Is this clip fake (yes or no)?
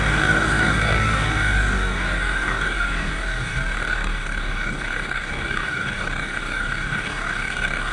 yes